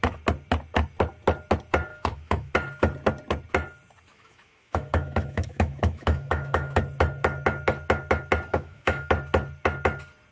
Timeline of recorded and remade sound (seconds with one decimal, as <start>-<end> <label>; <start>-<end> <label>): 0.0-1.9 recorded; 1.9-2.5 remade; 2.5-4.1 recorded; 4.1-6.8 remade; 6.8-8.5 recorded; 8.5-9.1 remade; 9.1-10.3 recorded